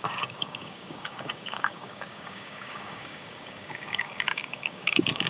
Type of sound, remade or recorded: remade